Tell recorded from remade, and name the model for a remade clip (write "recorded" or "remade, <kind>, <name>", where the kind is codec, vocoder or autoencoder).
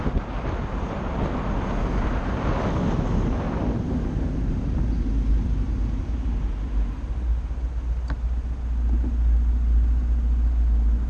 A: recorded